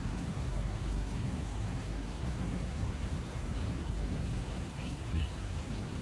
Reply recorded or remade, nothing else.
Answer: remade